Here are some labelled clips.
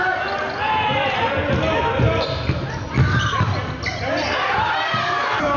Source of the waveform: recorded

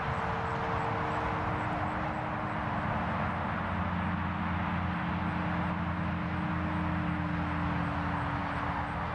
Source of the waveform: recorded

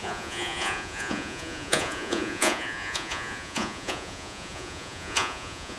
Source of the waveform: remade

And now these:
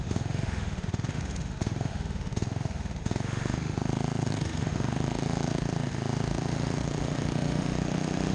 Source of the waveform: remade